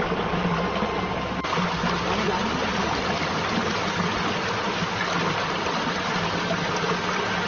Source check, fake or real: real